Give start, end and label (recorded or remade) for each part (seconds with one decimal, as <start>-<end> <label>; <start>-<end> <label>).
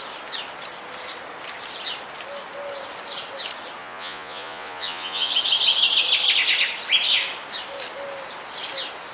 0.0-3.8 recorded; 3.8-5.3 remade; 5.3-9.1 recorded